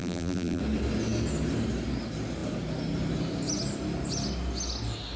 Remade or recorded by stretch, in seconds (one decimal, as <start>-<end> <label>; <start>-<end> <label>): 0.0-0.6 remade; 0.6-5.2 recorded